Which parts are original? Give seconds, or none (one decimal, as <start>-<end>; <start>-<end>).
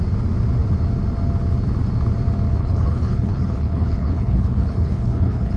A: 0.0-2.6